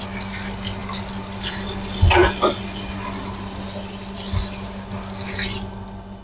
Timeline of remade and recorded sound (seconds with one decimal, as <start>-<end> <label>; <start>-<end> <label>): 0.0-6.2 recorded